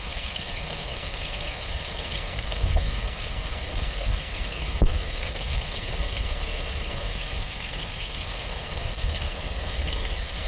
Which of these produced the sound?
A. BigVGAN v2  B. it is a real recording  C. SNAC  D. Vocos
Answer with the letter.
C